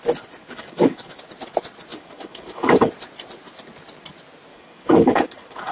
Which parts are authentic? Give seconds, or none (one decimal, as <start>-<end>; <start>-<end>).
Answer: 0.0-0.4; 1.2-1.9; 2.9-4.5